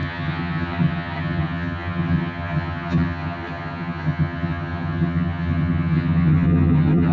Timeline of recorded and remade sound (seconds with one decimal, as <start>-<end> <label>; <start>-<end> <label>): 0.0-7.1 remade